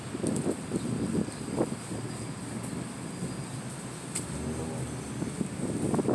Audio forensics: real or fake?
real